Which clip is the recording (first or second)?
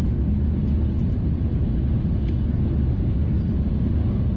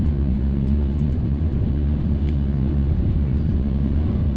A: first